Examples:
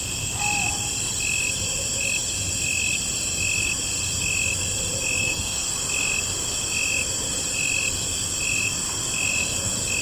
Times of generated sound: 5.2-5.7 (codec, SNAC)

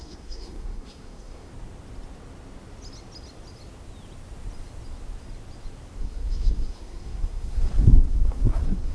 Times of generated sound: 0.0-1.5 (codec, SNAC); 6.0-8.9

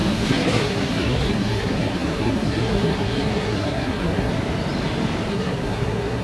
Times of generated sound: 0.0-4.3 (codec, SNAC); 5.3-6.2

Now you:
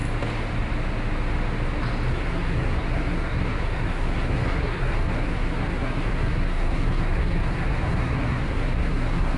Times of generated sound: 2.1-9.4 (codec, SNAC)

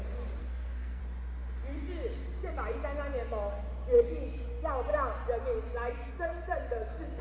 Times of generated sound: 0.4-1.0 (codec, SNAC)